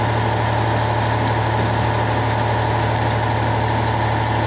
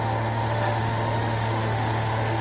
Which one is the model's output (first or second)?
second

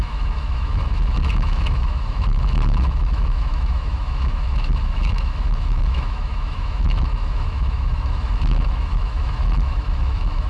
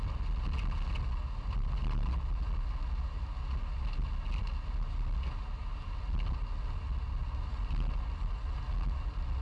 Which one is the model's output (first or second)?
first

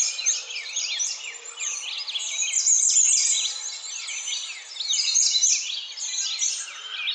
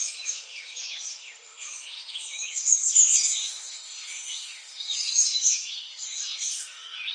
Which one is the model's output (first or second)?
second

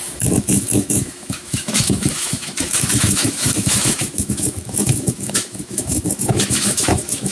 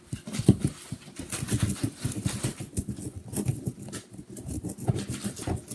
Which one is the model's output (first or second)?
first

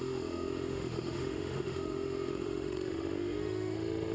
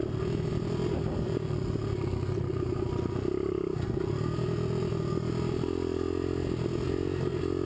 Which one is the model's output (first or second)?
first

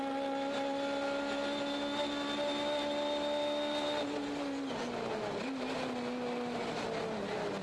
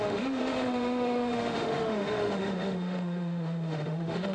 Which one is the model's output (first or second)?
second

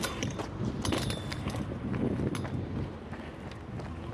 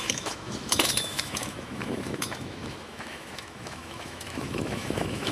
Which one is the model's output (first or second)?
second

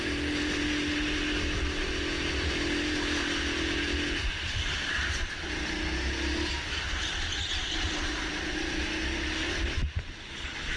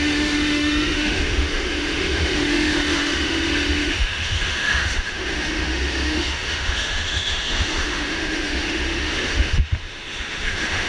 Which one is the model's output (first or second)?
second